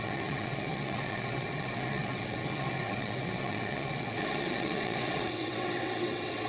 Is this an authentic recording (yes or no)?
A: no